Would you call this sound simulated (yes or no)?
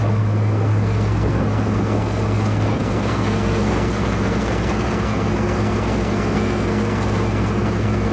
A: yes